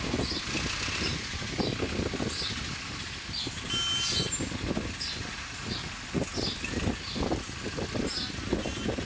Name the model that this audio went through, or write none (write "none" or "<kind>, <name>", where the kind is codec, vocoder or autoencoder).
none